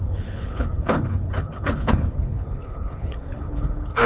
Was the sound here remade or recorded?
remade